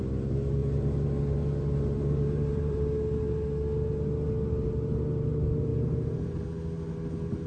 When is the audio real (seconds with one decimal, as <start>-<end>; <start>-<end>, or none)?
0.0-0.6; 2.8-7.5